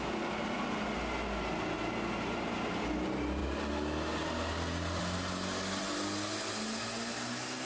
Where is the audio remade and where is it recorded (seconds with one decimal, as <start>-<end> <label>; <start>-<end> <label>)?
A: 0.0-7.7 recorded